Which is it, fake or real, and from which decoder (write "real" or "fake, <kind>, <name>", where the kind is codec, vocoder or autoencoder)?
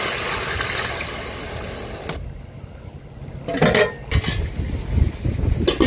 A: real